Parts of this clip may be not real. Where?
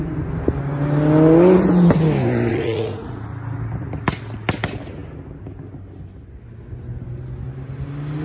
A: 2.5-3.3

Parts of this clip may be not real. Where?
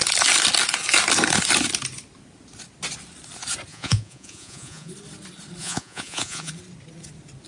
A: 3.7-4.9; 5.6-6.5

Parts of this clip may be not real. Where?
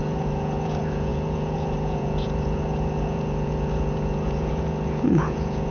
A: 0.0-5.7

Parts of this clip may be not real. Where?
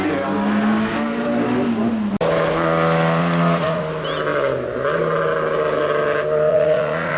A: 3.2-3.8; 6.5-7.2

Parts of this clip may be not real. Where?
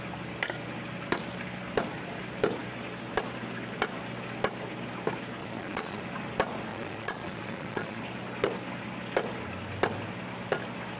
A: 5.4-6.0; 6.7-8.0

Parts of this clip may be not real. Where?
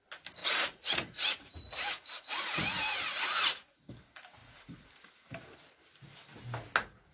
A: 0.4-3.9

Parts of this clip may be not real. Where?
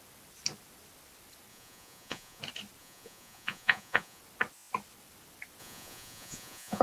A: 1.5-2.4; 2.8-4.2; 5.6-6.8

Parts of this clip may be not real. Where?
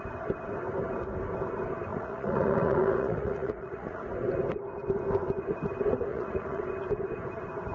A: 1.9-4.0; 6.1-6.6